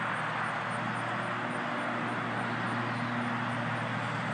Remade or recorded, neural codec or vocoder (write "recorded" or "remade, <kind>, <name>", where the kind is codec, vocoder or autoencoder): recorded